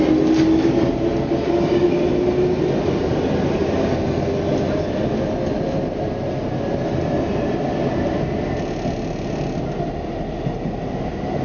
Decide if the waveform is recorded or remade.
recorded